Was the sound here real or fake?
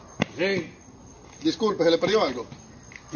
real